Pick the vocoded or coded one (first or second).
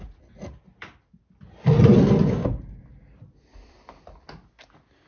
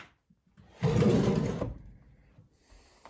second